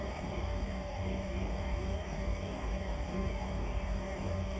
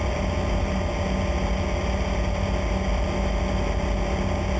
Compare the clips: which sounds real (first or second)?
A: second